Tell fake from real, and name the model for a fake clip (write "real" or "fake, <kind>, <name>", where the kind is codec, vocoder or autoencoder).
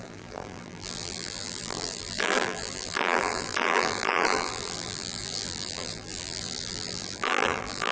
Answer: fake, vocoder, BigVGAN v2